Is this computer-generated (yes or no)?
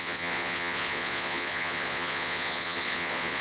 yes